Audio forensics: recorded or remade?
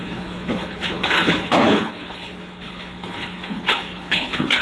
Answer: remade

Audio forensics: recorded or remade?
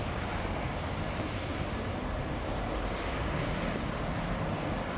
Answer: recorded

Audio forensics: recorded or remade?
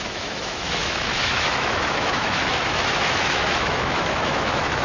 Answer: remade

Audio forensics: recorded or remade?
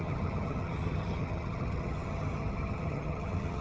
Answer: remade